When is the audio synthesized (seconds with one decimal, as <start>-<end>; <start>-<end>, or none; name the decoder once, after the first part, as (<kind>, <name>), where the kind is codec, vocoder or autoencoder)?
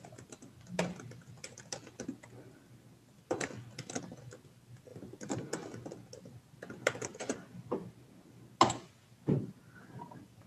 none